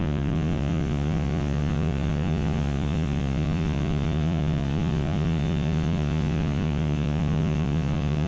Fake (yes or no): yes